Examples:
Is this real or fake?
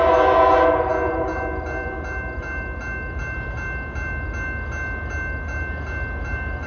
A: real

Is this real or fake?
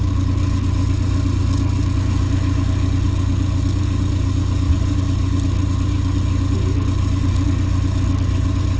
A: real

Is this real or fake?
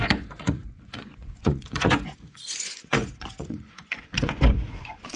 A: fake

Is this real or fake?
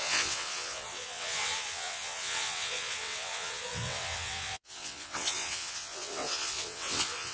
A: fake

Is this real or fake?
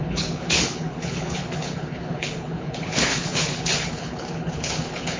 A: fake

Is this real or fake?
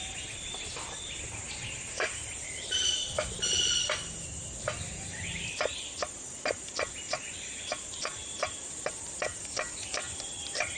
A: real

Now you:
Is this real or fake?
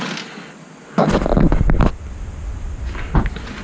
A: real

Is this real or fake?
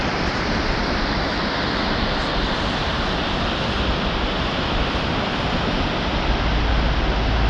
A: real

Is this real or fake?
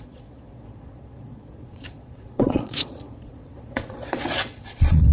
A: fake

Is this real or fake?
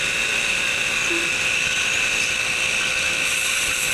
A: real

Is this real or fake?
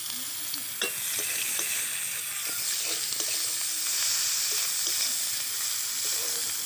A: real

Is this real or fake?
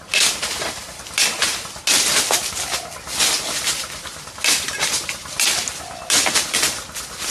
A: real